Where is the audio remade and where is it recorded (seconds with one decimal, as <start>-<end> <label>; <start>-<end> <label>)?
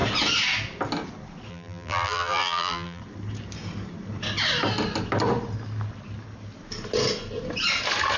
0.0-1.5 recorded; 1.5-3.0 remade; 3.0-8.2 recorded